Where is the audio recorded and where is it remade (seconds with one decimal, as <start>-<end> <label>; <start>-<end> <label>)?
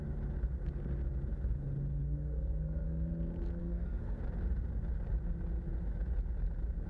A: 0.0-2.0 recorded; 2.0-3.1 remade; 3.1-3.6 recorded; 3.6-4.2 remade; 4.2-6.9 recorded